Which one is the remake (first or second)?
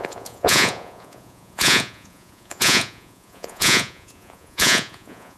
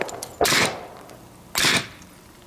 first